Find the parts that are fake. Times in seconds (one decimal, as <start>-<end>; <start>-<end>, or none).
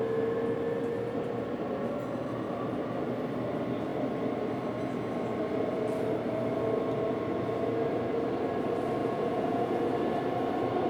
9.0-9.8